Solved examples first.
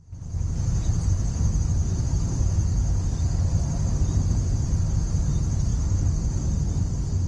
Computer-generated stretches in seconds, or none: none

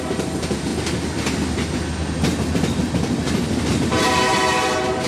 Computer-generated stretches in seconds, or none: 0.0-0.7; 3.8-5.1

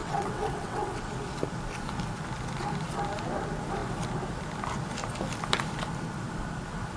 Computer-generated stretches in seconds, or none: 0.0-1.1